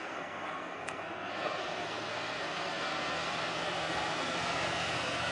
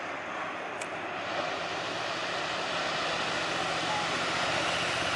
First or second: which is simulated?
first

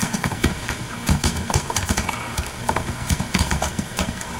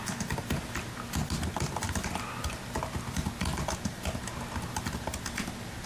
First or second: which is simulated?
first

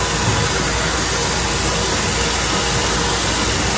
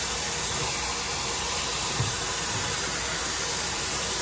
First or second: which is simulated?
second